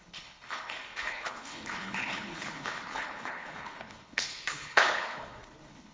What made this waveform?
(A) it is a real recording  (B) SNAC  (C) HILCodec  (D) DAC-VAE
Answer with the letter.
C